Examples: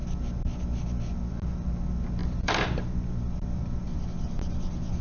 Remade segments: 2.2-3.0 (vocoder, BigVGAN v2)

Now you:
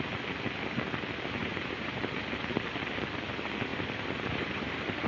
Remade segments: 1.4-2.0 (vocoder, BigVGAN v2); 3.7-5.1

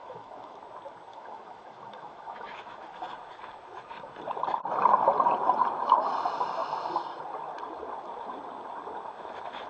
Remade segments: 0.0-0.6 (autoencoder, DAC-VAE); 1.1-3.0

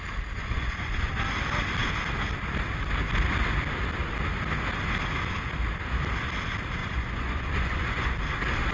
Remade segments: 0.4-1.1 (vocoder, Vocos); 6.8-8.1

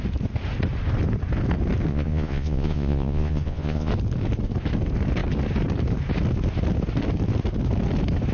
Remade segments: 1.9-3.9 (vocoder, Vocos)

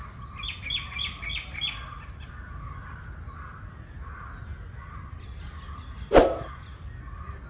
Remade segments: 4.5-5.7 (vocoder, BigVGAN v2)